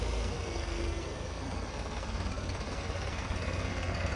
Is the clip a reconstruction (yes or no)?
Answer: yes